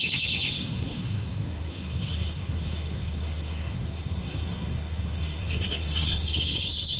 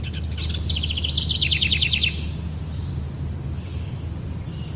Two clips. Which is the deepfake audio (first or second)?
first